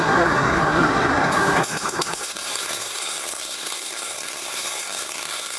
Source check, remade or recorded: remade